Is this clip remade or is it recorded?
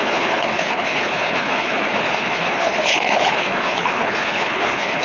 remade